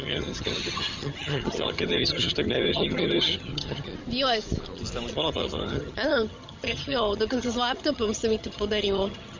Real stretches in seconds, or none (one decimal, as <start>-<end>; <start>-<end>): 3.9-5.1